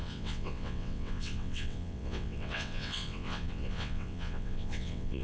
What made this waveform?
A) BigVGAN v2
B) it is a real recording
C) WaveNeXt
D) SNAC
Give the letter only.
C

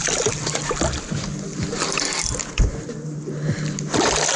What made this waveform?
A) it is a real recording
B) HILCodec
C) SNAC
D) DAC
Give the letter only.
A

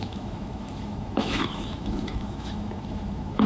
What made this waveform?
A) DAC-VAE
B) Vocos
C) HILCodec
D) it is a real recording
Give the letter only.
A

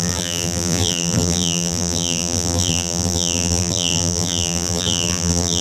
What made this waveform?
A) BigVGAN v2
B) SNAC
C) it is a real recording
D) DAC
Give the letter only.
A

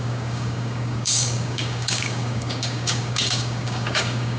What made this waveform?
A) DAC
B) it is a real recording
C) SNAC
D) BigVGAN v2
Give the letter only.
A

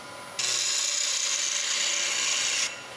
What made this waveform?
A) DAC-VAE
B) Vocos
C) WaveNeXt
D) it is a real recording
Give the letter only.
D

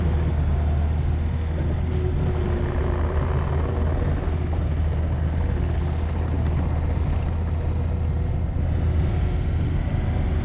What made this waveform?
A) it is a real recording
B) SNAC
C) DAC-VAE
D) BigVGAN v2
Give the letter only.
A